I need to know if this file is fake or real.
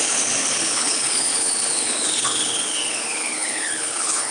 fake